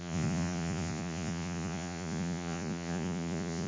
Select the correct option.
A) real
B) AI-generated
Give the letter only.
B